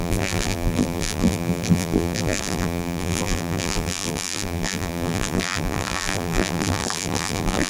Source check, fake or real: fake